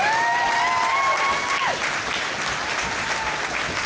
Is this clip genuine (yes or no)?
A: yes